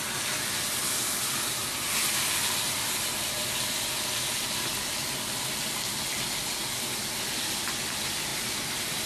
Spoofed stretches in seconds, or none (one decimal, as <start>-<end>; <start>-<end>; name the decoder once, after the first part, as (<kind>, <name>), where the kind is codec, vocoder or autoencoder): 8.3-9.1 (vocoder, BigVGAN v2)